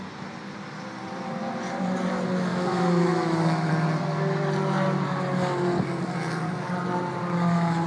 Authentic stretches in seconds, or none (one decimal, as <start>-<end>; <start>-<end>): 0.0-2.5; 3.7-7.9